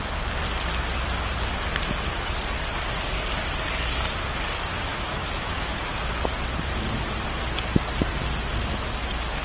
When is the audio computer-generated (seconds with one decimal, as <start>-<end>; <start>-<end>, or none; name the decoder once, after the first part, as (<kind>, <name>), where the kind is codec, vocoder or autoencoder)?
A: 4.9-5.8 (autoencoder, DAC-VAE); 8.7-9.4